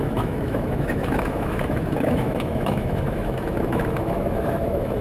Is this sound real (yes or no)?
no